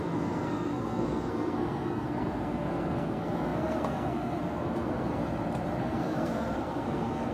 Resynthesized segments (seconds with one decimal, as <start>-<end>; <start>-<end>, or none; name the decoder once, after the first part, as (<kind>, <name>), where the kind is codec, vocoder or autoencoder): 0.0-5.2 (codec, SNAC); 5.8-7.3